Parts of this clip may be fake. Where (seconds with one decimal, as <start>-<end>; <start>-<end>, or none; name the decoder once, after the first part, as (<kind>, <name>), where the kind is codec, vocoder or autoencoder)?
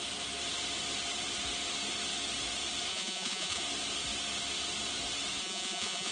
2.9-3.6 (vocoder, Vocos); 5.4-6.1